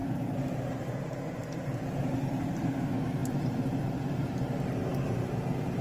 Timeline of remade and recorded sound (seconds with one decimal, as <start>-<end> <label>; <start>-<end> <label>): 0.0-3.2 recorded; 3.2-4.3 remade; 4.3-4.8 recorded; 4.8-5.8 remade